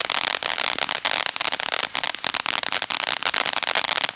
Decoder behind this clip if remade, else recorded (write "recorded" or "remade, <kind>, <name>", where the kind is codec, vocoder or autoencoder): recorded